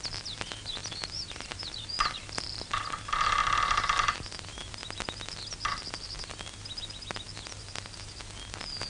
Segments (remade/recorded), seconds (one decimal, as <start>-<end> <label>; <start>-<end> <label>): 0.0-3.4 remade; 3.4-4.1 recorded; 4.1-4.8 remade; 4.8-8.9 recorded